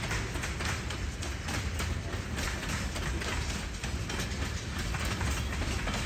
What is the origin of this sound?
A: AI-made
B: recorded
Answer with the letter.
B